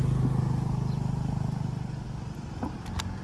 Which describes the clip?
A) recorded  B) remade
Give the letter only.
A